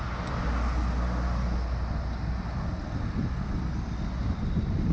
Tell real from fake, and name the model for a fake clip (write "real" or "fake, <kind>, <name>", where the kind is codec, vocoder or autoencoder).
real